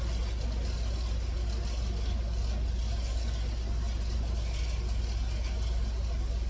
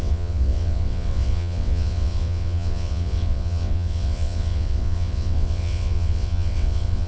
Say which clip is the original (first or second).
first